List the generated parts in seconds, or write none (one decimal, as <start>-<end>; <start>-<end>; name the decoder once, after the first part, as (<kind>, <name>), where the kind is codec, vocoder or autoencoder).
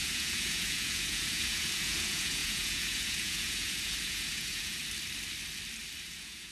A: 0.0-4.8 (vocoder, Vocos); 6.0-6.5